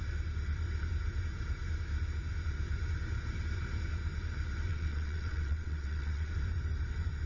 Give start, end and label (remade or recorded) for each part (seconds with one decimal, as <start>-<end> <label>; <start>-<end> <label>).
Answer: 0.0-4.7 recorded; 4.7-6.3 remade; 6.3-7.3 recorded